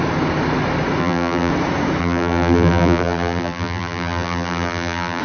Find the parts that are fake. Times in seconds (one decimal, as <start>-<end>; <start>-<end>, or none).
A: 1.0-1.5; 2.0-5.2